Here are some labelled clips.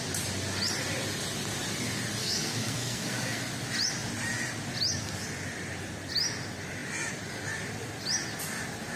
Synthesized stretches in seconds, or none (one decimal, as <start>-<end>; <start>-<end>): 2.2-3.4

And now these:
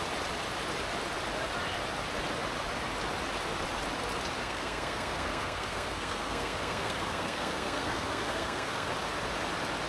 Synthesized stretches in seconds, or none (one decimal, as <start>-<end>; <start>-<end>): 4.4-8.9

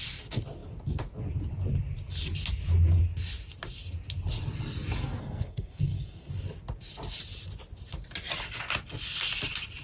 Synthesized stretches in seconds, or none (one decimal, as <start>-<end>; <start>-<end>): 5.2-6.3

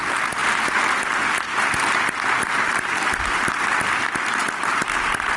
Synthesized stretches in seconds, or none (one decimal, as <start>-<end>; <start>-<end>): none

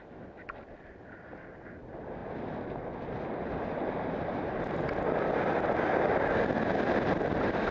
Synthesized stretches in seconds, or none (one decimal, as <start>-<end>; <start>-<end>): none